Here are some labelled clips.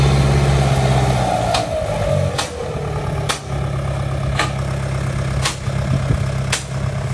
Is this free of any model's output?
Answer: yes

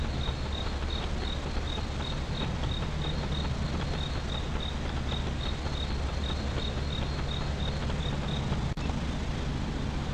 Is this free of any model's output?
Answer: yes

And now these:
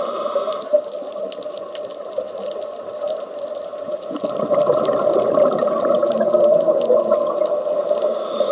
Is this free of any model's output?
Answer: yes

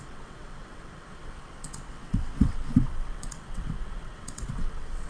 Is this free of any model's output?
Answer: no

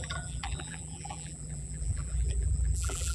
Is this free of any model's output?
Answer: no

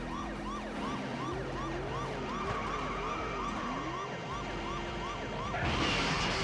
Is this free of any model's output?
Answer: yes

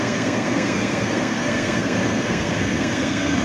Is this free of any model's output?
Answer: no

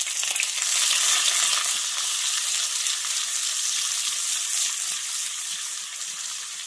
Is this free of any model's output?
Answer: yes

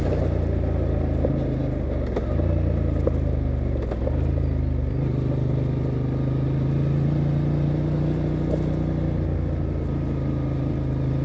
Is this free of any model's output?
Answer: yes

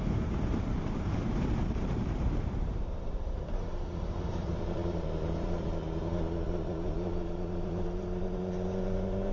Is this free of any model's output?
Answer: no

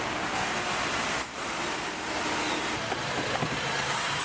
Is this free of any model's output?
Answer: yes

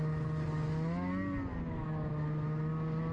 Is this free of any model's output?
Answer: yes